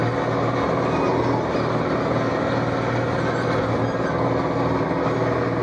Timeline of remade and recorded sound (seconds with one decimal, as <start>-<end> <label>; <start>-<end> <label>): 0.0-5.6 recorded